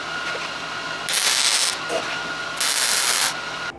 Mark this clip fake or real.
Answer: real